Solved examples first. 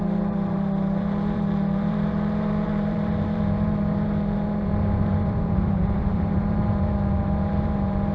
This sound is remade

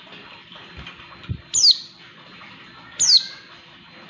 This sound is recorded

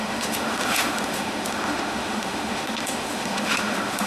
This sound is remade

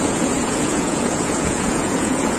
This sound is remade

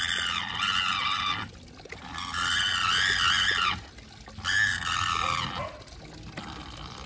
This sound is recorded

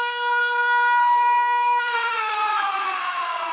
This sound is remade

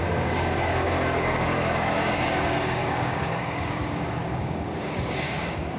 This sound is remade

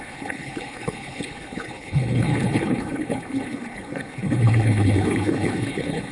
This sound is remade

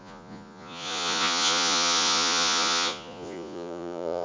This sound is remade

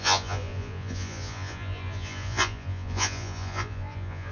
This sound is remade